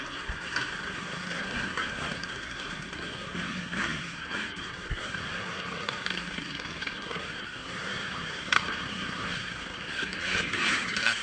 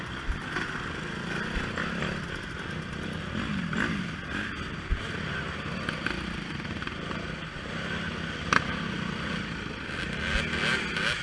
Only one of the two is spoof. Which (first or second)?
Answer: first